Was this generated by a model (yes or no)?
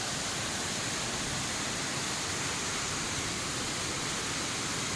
no